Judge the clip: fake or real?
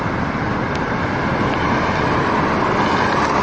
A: real